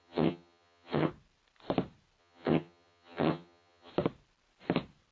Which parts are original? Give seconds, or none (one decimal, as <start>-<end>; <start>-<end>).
1.1-2.2; 3.9-5.1